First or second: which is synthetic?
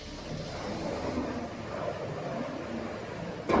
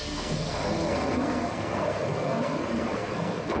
second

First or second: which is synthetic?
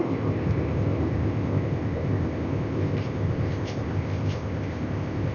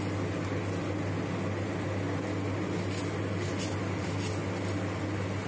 first